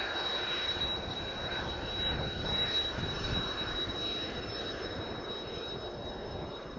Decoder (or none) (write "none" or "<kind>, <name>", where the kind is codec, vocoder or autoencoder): none